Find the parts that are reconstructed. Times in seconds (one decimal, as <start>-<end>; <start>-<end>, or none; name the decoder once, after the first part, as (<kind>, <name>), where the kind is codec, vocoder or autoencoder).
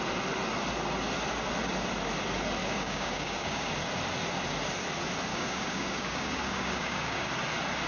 2.6-3.7 (codec, DAC); 5.3-7.3